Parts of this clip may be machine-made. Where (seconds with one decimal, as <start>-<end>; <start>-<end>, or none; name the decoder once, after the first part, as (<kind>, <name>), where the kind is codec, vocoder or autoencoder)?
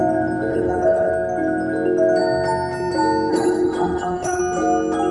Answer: 0.5-1.1 (codec, HILCodec); 3.3-4.4